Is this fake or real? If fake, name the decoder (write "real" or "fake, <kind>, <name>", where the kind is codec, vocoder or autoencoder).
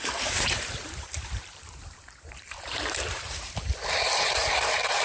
fake, vocoder, BigVGAN v2